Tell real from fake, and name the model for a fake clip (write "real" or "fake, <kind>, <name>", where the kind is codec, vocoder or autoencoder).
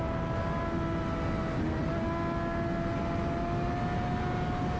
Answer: real